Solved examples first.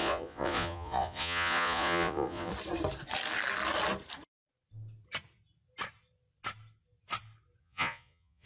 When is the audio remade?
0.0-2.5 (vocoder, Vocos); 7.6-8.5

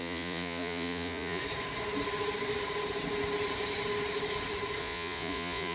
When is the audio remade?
0.0-1.4 (vocoder, Vocos); 4.8-5.7

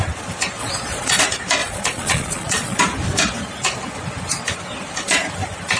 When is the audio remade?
0.6-1.2 (vocoder, Vocos); 1.6-2.8